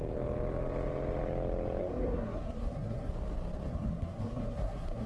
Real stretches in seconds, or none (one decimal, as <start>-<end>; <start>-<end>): 0.0-1.8; 3.1-3.7